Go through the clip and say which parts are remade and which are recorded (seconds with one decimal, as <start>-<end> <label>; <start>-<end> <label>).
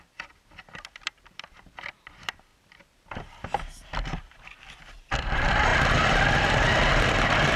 0.0-7.6 remade